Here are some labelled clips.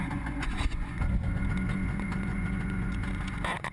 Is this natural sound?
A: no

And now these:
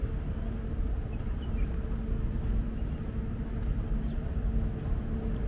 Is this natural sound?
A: yes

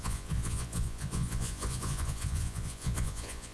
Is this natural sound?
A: no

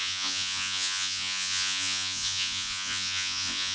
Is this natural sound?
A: no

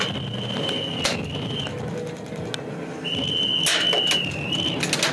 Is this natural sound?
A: yes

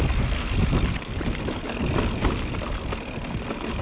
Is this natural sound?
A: yes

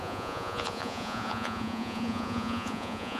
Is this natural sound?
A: no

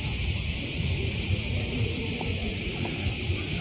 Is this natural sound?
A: no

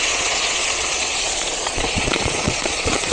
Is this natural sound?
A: no